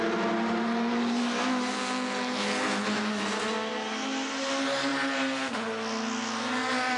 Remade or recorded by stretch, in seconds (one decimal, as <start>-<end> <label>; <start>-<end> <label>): 0.0-7.0 recorded